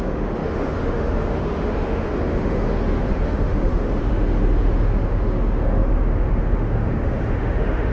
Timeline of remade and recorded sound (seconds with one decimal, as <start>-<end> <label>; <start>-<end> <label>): 0.0-7.9 remade